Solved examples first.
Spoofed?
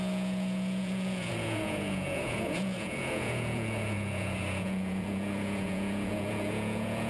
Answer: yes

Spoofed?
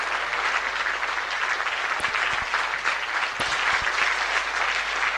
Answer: no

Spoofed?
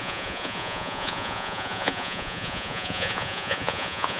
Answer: yes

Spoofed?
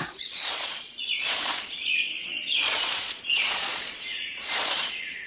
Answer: yes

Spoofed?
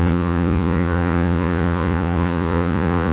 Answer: yes